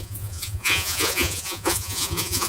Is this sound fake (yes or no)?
yes